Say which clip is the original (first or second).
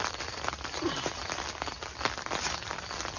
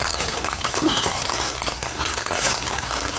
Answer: first